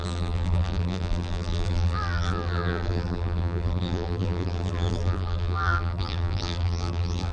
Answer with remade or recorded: remade